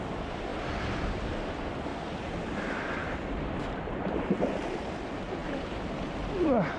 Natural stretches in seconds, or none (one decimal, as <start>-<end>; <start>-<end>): 1.9-2.8